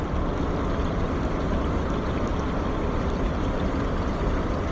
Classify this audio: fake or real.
real